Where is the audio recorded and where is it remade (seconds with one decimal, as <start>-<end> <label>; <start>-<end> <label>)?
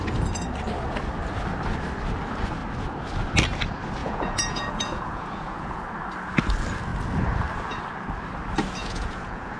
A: 0.0-4.0 recorded; 4.0-5.8 remade; 5.8-8.8 recorded; 8.8-9.6 remade